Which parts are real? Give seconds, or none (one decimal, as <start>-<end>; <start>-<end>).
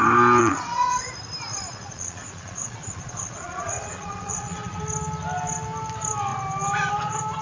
0.0-0.4; 1.1-1.5; 4.8-7.4